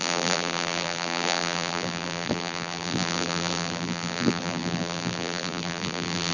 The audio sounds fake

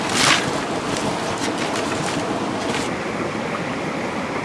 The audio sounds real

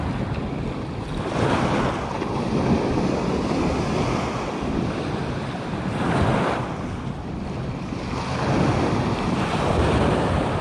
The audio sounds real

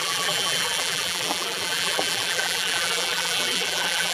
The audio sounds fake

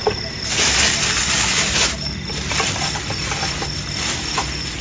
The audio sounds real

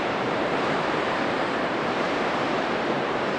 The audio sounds fake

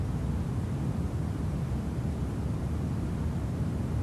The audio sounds real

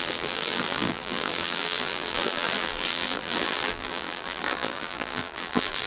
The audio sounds fake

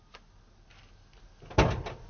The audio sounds real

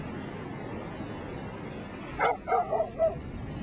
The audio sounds real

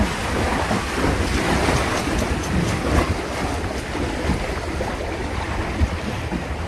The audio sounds real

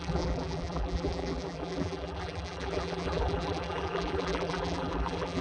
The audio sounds fake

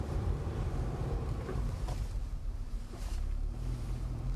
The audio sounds fake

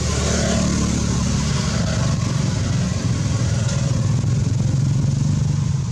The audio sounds real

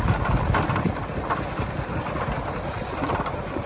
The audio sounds fake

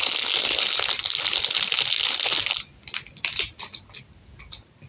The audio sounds real